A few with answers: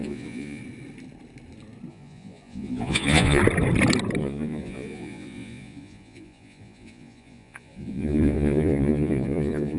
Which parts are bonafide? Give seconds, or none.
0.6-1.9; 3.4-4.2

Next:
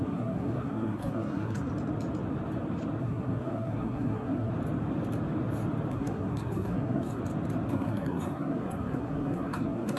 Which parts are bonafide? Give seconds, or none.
1.7-3.0; 4.5-5.9; 7.2-7.7

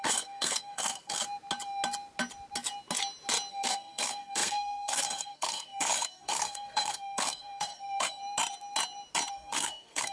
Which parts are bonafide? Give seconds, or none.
1.2-3.5; 8.2-9.3

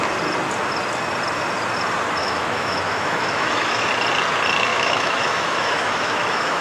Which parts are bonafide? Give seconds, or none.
0.0-2.2; 3.9-4.7

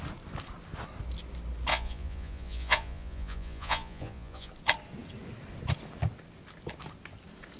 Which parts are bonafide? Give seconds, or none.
0.0-1.7; 4.5-7.6

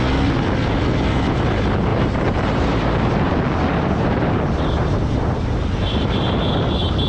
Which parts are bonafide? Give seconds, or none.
0.0-1.9; 3.3-3.7; 5.4-7.1